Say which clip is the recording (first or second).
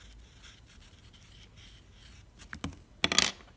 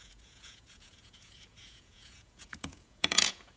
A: first